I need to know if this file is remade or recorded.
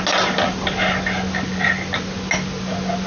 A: recorded